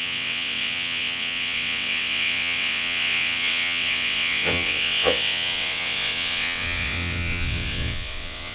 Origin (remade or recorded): remade